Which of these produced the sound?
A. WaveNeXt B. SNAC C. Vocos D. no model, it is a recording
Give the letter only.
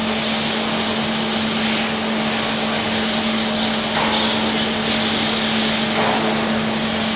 D